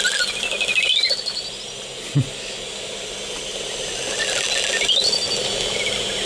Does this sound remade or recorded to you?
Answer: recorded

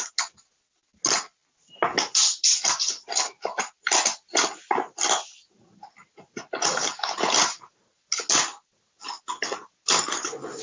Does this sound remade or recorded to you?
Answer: recorded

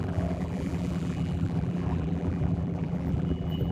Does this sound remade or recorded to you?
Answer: remade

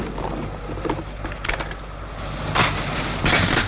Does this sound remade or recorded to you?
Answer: recorded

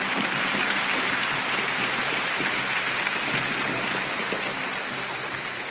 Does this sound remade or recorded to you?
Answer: remade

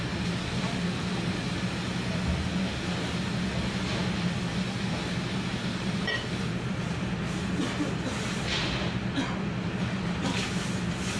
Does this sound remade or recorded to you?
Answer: recorded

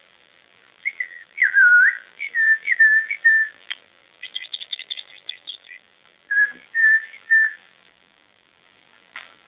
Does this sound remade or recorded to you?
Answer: remade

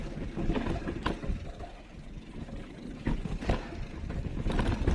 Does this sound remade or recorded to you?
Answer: recorded